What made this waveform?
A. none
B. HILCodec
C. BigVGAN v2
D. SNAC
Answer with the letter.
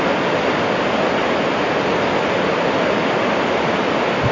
A